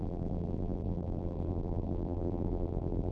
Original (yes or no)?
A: no